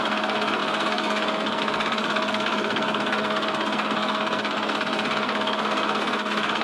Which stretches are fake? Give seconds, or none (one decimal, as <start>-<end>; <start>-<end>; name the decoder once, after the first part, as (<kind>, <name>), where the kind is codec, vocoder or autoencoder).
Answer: 0.0-6.6 (codec, SNAC)